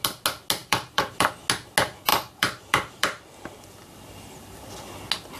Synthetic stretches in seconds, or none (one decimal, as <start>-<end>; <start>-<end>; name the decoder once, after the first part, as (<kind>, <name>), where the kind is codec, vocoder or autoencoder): 0.6-1.3 (vocoder, BigVGAN v2); 2.1-4.7